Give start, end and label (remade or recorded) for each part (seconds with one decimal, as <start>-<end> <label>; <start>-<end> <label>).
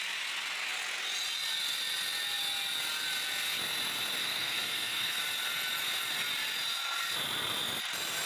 0.0-4.2 recorded; 4.2-5.2 remade; 5.2-8.3 recorded